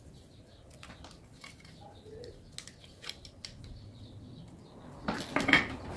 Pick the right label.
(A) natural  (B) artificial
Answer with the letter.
A